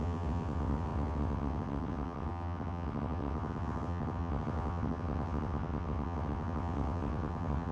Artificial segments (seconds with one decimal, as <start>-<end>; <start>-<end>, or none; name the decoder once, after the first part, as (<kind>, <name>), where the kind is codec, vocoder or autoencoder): 0.0-7.7 (vocoder, WaveNeXt)